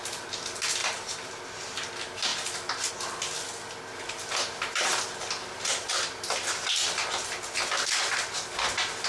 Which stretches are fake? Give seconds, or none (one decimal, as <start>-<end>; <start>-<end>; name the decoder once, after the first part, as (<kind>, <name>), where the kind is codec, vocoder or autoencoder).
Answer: 0.8-1.9 (vocoder, BigVGAN v2); 3.9-5.0